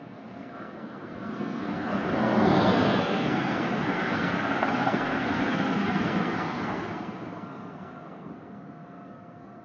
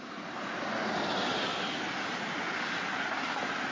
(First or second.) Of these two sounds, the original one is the second